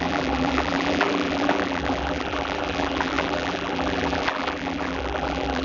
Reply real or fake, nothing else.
fake